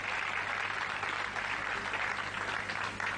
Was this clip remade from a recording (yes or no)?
no